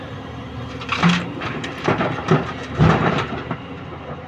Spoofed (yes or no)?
yes